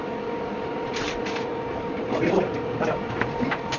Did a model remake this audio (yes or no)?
yes